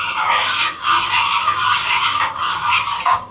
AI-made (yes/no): yes